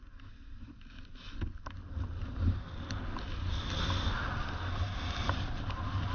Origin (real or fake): real